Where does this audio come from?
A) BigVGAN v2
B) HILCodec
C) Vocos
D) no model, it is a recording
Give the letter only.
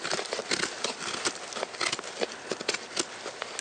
D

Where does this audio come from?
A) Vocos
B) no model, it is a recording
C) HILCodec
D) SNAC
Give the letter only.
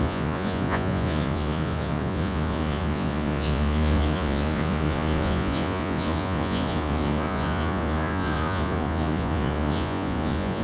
A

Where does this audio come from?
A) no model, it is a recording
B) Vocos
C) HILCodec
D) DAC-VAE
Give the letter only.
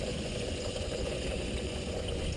B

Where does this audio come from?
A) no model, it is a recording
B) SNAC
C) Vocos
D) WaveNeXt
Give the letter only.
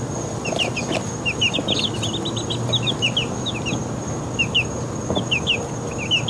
A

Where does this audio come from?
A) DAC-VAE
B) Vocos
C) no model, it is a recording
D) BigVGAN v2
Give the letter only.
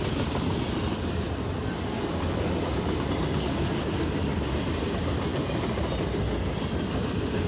C